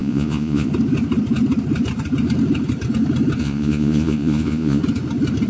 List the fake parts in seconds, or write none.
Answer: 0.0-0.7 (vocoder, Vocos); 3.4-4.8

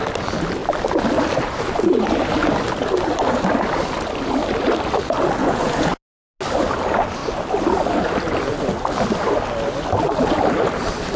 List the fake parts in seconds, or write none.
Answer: 5.4-5.9 (vocoder, Vocos)

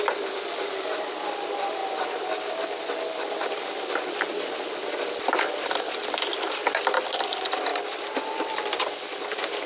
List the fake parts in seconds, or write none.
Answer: none

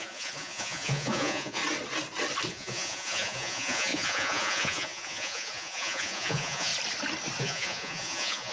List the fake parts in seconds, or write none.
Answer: 0.0-1.6 (vocoder, Vocos); 2.5-6.7; 7.4-8.5

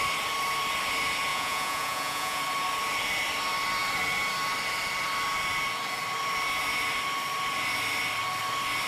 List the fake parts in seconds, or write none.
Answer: 1.3-2.4 (vocoder, Vocos)

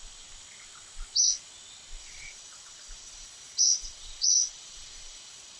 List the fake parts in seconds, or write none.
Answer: 2.0-5.6 (vocoder, Vocos)

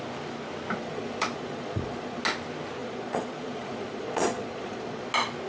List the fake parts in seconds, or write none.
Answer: 0.8-2.2 (vocoder, Vocos); 2.8-5.1

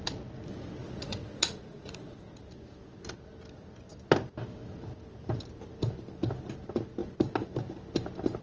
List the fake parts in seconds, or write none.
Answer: 0.8-2.3 (vocoder, Vocos)